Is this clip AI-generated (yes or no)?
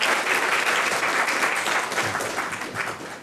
no